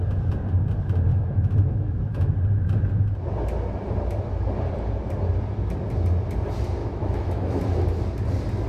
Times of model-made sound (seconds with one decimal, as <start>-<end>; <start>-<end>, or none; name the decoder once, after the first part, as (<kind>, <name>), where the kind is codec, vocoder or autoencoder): 1.1-2.3 (autoencoder, DAC-VAE); 6.8-7.6

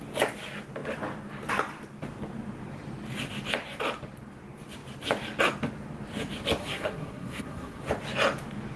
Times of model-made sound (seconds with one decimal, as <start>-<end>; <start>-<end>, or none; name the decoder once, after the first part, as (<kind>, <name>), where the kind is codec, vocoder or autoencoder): 6.6-7.8 (codec, SNAC)

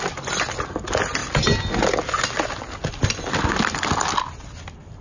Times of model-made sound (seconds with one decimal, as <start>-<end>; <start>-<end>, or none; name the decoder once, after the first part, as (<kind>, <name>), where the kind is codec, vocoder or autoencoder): none

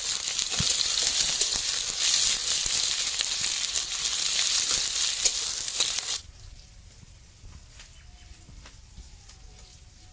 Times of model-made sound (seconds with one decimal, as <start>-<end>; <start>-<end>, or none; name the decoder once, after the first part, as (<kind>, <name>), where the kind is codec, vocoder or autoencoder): none

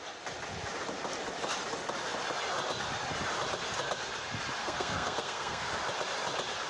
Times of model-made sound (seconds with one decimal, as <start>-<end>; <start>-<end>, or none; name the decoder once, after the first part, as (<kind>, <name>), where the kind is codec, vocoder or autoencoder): 4.6-5.7 (codec, SNAC)

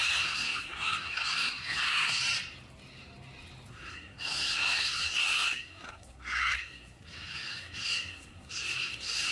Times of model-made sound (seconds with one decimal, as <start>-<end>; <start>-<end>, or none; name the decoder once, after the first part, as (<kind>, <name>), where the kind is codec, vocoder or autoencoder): 0.0-2.2 (codec, SNAC); 3.7-9.3

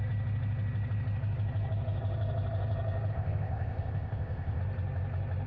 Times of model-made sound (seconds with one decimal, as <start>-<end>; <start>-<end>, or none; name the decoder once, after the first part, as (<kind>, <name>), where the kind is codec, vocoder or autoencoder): 3.1-4.6 (codec, ZipCodec)